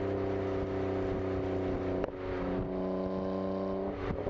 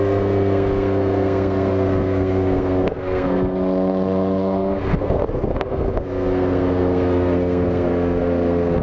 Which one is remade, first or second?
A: second